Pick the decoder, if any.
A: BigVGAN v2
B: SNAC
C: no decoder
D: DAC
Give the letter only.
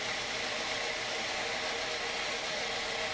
C